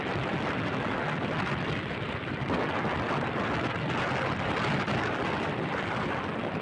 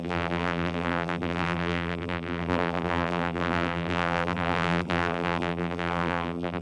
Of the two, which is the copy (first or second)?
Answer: second